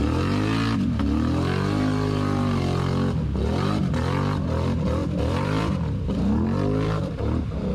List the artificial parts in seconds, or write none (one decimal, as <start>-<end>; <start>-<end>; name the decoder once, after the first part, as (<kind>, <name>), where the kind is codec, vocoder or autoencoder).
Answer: 5.0-7.1 (vocoder, BigVGAN v2)